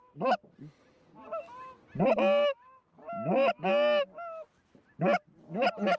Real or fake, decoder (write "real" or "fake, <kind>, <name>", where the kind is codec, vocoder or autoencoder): real